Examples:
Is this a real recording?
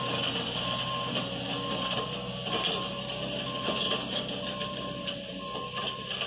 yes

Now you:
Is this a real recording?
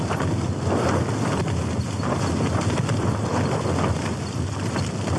yes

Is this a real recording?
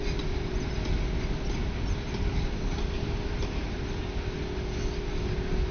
yes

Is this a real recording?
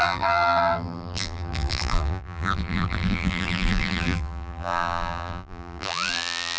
no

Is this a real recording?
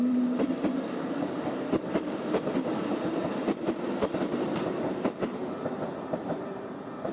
no